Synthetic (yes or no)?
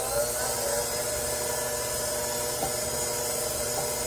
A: no